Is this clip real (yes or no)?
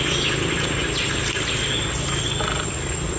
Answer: yes